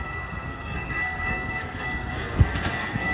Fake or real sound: fake